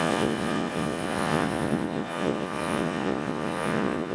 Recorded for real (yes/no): no